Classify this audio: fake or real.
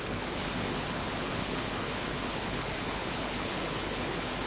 fake